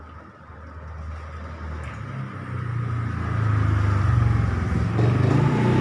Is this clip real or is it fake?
real